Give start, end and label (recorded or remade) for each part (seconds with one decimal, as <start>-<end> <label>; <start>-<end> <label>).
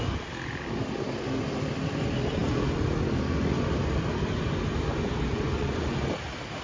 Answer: 0.0-5.3 recorded; 5.3-5.9 remade; 5.9-6.6 recorded